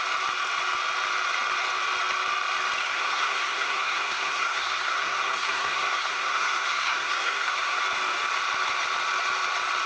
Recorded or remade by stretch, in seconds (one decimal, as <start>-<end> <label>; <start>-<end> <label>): 0.0-2.8 recorded; 2.8-7.8 remade; 7.8-9.9 recorded